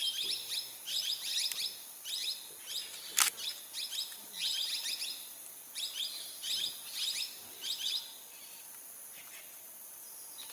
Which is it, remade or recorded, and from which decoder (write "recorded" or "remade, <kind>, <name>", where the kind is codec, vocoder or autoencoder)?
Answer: recorded